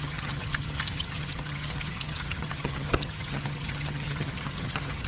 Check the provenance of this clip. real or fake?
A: fake